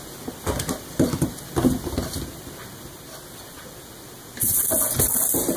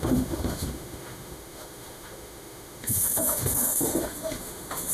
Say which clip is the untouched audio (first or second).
first